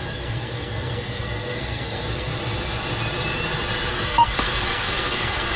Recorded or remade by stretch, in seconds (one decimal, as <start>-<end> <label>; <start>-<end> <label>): 0.0-2.3 remade; 2.3-3.9 recorded; 3.9-5.6 remade